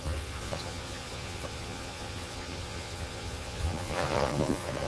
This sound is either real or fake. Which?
fake